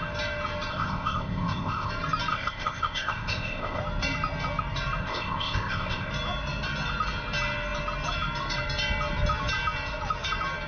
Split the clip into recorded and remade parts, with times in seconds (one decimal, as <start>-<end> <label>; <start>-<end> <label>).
0.0-0.7 recorded; 0.7-1.9 remade; 1.9-2.3 recorded; 2.3-3.8 remade; 3.8-5.0 recorded; 5.0-6.1 remade; 6.1-10.7 recorded